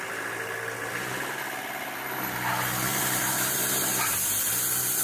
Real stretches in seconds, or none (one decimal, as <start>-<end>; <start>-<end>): 0.0-2.9; 3.6-5.0